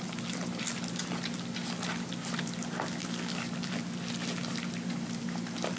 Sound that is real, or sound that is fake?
real